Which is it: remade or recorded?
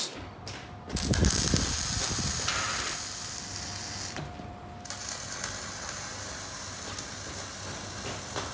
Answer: recorded